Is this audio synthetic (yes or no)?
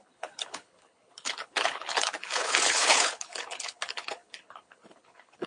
yes